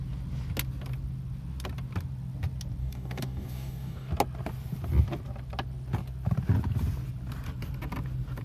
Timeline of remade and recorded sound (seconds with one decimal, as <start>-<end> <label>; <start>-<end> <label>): 0.0-2.8 recorded; 2.8-4.1 remade; 4.1-8.4 recorded